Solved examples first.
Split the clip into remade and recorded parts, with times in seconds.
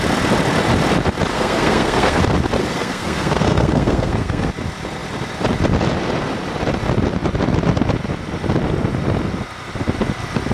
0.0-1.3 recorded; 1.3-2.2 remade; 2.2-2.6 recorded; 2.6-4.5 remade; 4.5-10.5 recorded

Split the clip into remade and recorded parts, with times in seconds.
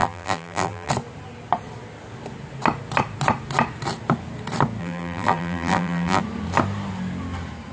0.0-0.9 remade; 0.9-4.8 recorded; 4.8-6.2 remade; 6.2-7.7 recorded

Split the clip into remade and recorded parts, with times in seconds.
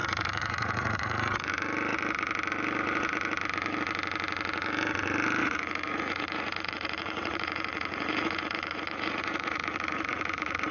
0.0-1.5 remade; 1.5-5.4 recorded; 5.4-10.7 remade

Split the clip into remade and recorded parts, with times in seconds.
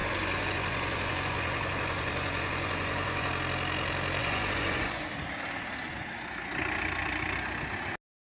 0.0-3.3 remade; 3.3-4.2 recorded; 4.2-5.1 remade; 5.1-8.2 recorded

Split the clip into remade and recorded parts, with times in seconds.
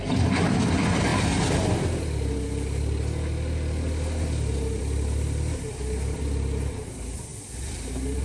0.0-8.2 recorded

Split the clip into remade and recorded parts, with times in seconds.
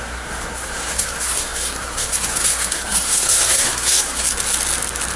0.0-4.3 remade; 4.3-5.2 recorded